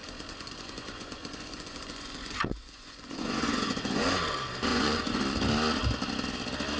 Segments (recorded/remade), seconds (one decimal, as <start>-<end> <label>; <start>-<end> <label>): 0.0-4.1 remade; 4.1-4.7 recorded; 4.7-5.2 remade; 5.2-6.8 recorded